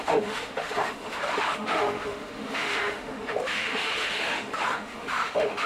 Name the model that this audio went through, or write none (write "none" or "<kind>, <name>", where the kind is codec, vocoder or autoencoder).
autoencoder, DAC-VAE